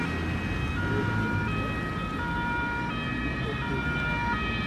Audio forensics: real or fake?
real